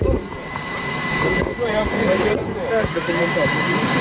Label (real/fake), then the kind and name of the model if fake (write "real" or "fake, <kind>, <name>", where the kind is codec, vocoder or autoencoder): fake, vocoder, BigVGAN v2